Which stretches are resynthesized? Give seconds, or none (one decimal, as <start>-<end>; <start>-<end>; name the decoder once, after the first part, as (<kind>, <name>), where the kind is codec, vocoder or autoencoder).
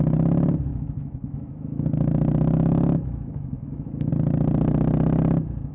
0.7-4.1 (autoencoder, DAC-VAE)